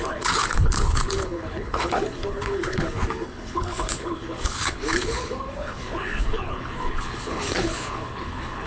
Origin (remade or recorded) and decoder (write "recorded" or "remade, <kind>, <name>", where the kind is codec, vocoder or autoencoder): remade, codec, HILCodec